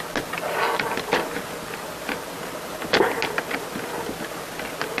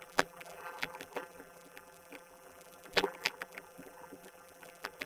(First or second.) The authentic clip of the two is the first